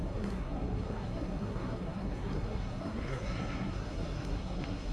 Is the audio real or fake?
fake